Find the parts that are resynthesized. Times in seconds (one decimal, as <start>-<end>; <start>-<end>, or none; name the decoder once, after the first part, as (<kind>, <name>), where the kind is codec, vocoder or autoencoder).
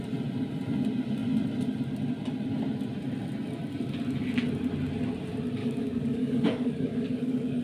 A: 5.6-7.6 (codec, DAC)